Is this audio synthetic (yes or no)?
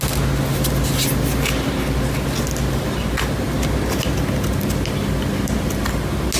no